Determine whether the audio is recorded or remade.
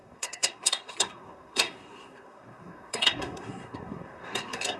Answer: remade